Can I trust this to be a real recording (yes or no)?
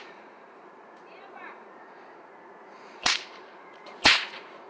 no